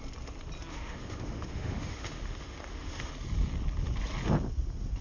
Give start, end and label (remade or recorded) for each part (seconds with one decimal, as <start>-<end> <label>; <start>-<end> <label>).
0.0-0.7 recorded; 0.7-3.1 remade; 3.1-5.0 recorded